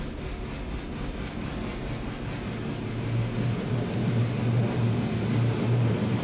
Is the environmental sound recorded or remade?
recorded